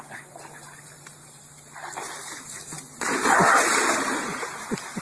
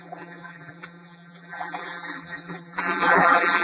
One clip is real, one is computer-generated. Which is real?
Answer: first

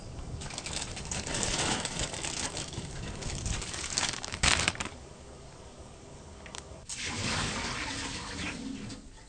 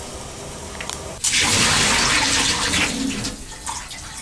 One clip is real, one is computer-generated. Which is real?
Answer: second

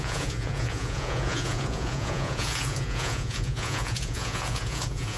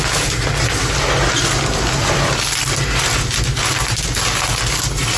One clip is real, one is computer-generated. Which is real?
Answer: second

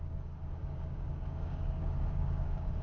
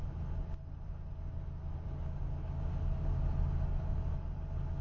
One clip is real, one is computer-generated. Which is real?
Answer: second